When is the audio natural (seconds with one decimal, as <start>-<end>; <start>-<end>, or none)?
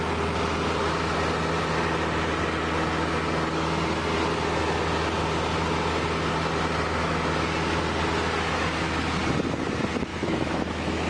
0.0-10.1